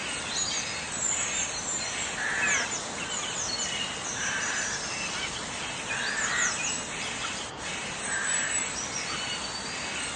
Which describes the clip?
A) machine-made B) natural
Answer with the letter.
B